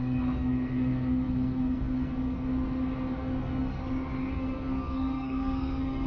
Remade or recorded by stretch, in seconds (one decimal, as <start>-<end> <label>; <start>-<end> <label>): 0.0-2.5 remade; 2.5-3.2 recorded; 3.2-3.8 remade; 3.8-4.3 recorded; 4.3-6.1 remade